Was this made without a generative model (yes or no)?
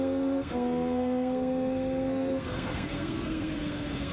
no